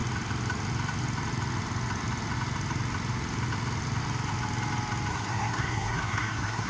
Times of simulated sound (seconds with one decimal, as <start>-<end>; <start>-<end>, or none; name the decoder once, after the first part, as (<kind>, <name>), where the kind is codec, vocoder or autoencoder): 5.1-6.7 (codec, SNAC)